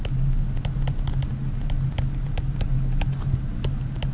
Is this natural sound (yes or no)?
yes